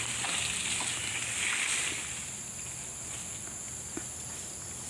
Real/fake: real